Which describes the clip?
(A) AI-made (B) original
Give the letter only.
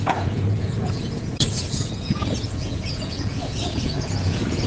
A